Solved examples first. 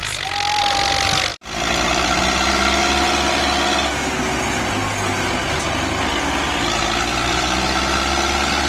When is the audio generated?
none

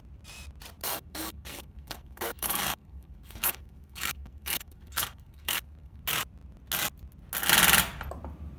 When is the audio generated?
0.8-6.0

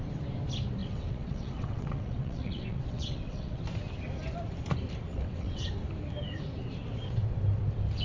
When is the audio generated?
0.8-3.6; 5.1-5.7

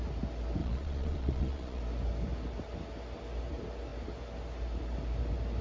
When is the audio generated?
0.6-1.8

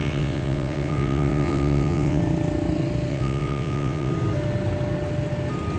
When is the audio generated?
0.0-2.2; 3.1-4.1

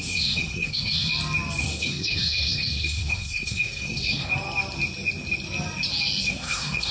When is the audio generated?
0.0-1.1; 1.6-4.3; 6.3-6.9

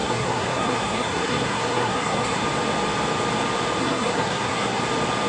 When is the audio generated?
0.0-2.4; 3.8-4.8